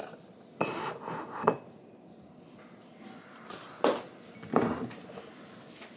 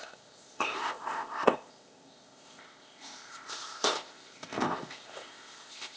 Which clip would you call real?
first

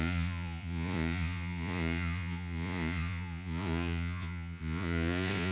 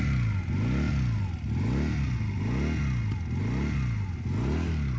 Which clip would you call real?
second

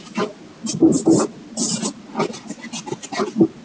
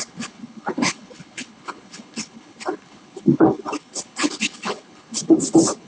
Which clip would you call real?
first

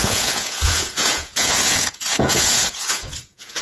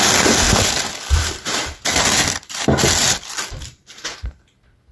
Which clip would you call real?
second